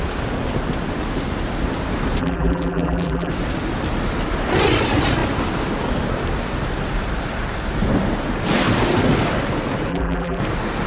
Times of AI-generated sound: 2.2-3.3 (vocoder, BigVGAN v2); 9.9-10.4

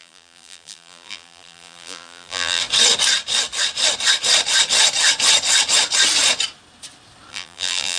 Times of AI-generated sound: 0.0-2.6 (vocoder, BigVGAN v2); 7.3-8.0

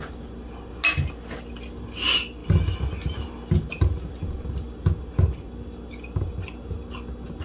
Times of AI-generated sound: none

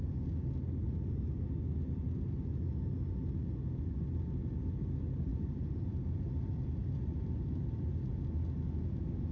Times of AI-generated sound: 5.3-8.3 (vocoder, BigVGAN v2)

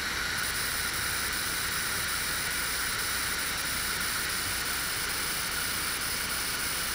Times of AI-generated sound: none